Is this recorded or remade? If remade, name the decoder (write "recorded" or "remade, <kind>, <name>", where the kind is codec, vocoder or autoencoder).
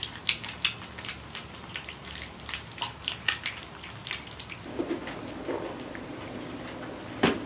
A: recorded